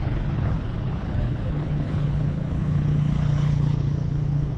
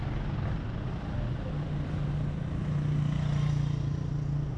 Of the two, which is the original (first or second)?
second